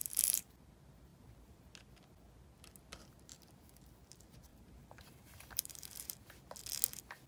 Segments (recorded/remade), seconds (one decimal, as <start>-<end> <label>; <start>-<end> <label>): 0.0-0.7 remade; 0.7-1.1 recorded; 1.1-1.7 remade; 1.7-4.5 recorded; 4.5-6.1 remade; 6.1-7.3 recorded